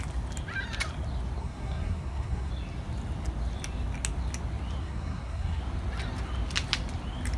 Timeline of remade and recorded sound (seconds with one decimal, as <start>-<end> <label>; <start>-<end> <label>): 0.0-1.4 recorded; 1.4-2.5 remade; 2.5-4.8 recorded; 4.8-5.6 remade; 5.6-7.4 recorded